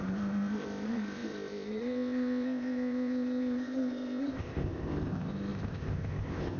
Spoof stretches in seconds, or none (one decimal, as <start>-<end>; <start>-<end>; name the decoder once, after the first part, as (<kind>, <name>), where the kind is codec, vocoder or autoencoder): 0.0-6.6 (codec, ZipCodec)

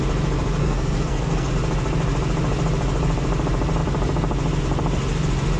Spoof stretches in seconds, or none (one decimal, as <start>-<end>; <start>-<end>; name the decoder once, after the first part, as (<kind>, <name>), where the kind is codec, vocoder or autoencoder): 0.6-1.5 (codec, SNAC)

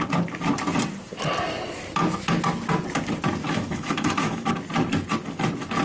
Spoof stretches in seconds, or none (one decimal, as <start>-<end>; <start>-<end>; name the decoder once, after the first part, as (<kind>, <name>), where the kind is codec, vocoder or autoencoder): 3.4-4.5 (autoencoder, DAC-VAE)

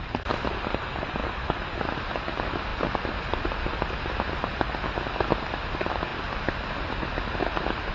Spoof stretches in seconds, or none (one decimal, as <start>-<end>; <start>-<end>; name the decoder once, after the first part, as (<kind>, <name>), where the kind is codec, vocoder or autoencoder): none

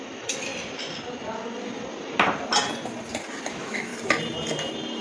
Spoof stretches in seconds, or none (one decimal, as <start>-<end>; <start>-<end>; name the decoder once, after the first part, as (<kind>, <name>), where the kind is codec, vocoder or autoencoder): 0.0-0.5 (autoencoder, DAC-VAE); 3.5-3.9